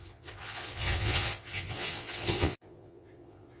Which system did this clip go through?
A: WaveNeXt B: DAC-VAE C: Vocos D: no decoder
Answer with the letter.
C